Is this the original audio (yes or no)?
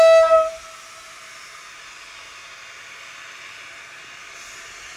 yes